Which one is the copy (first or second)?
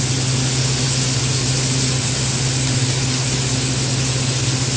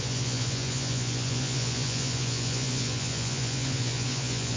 second